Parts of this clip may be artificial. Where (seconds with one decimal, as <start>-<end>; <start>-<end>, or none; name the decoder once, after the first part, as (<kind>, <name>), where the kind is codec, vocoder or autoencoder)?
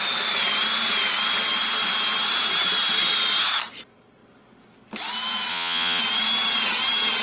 5.5-6.0 (vocoder, Vocos)